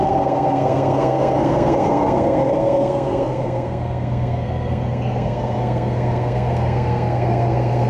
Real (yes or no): no